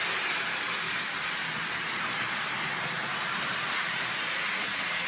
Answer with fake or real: real